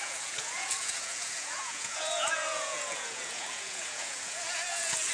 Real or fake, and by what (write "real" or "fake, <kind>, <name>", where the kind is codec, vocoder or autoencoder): fake, vocoder, Vocos